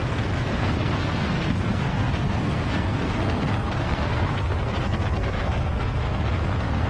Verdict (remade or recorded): remade